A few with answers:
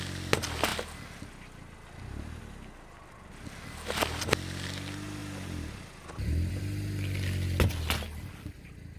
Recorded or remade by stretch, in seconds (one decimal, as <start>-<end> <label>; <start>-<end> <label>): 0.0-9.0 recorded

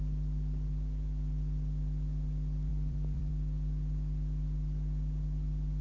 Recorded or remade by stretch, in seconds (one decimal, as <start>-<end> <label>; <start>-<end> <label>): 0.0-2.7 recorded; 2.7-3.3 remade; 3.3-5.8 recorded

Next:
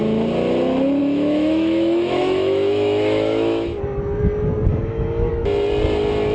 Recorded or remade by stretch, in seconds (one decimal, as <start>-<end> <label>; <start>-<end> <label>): 0.0-1.0 recorded; 1.0-3.8 remade; 3.8-4.7 recorded; 4.7-5.3 remade; 5.3-6.3 recorded

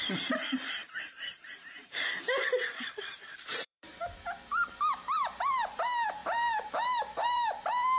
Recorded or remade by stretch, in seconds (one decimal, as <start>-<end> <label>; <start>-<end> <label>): 0.0-8.0 remade